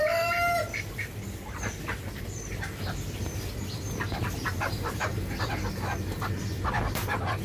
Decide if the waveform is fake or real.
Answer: fake